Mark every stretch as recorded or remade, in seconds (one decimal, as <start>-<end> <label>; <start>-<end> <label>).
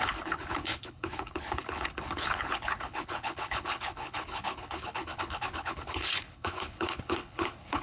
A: 0.0-7.8 remade